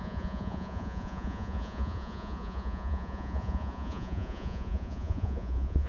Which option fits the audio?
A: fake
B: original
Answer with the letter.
A